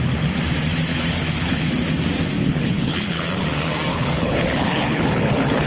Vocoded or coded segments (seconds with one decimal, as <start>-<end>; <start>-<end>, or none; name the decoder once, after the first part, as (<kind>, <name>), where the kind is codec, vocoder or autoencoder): 0.9-1.7 (codec, HILCodec); 2.4-3.2; 3.9-5.7